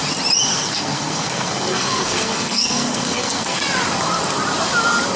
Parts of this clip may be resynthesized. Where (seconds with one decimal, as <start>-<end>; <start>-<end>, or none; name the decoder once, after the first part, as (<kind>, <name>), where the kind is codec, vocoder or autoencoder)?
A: 0.5-3.6 (codec, SNAC)